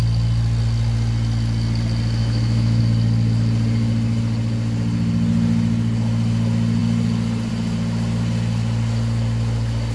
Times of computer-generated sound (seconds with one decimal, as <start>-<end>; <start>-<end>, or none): 2.2-2.8

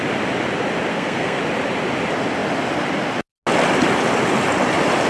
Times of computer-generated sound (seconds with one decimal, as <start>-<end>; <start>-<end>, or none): 0.9-1.4

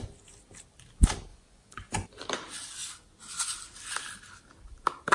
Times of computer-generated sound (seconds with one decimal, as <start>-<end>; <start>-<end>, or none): 1.3-2.2

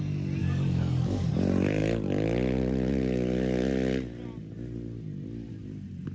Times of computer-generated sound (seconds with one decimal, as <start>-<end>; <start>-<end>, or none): 0.4-1.3

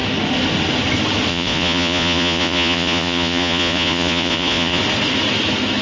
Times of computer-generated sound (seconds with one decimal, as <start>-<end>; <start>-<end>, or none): 1.3-4.8

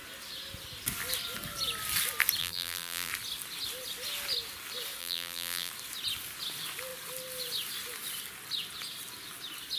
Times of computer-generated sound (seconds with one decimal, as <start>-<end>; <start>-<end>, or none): 2.4-3.1; 5.0-5.7